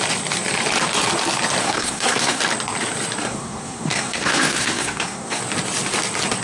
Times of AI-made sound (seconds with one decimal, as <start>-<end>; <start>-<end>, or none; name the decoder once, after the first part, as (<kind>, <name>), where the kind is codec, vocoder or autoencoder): 1.6-2.4 (codec, SNAC); 3.2-5.4

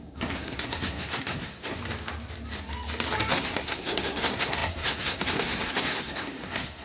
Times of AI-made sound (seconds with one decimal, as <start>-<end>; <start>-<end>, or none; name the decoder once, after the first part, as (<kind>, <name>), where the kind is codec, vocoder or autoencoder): 0.0-1.8 (codec, SNAC); 3.3-6.8

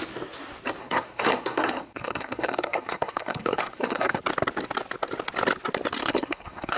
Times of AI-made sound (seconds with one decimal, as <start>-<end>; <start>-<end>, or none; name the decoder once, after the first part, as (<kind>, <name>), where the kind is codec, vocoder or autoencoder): 0.8-4.2 (codec, SNAC); 6.0-6.8

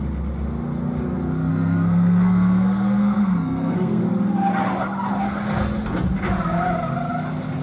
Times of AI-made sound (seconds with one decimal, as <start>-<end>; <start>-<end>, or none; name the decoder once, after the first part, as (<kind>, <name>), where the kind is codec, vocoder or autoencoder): 1.5-4.0 (codec, SNAC)